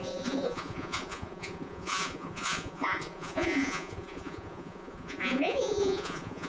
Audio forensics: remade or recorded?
remade